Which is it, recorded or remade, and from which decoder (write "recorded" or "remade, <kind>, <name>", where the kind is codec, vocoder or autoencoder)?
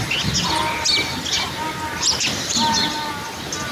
recorded